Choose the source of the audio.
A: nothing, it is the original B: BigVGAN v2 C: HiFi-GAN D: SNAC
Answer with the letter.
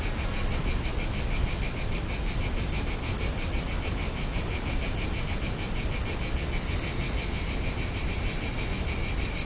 A